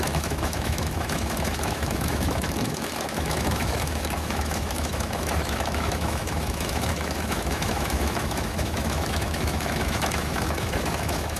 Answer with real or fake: fake